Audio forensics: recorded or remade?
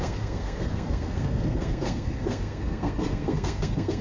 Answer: remade